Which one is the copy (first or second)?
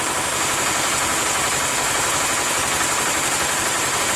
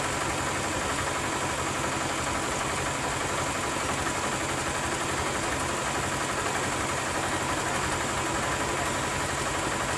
first